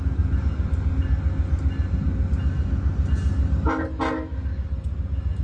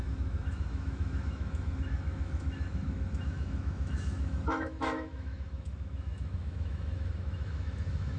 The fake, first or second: second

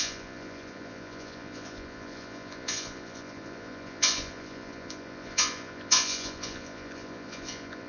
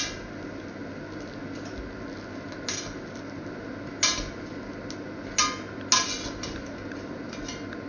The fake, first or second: first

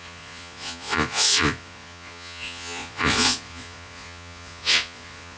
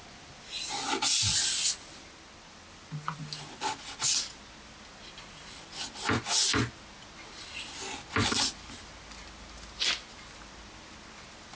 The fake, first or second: first